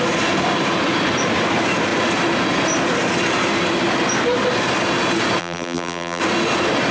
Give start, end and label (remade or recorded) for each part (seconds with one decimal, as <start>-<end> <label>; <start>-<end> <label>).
0.0-5.4 recorded; 5.4-6.2 remade; 6.2-6.9 recorded